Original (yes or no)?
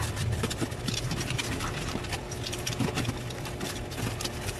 yes